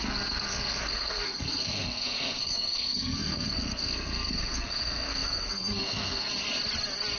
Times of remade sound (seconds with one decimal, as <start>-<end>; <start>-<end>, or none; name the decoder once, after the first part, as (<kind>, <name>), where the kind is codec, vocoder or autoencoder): 0.0-6.3 (codec, SNAC)